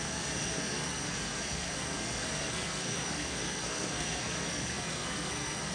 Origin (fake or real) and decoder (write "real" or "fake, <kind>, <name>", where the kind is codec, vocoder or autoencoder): fake, codec, SNAC